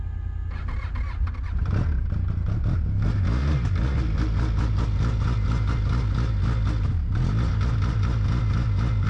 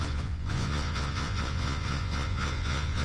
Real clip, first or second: first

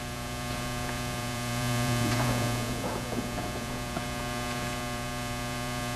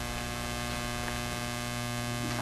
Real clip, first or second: second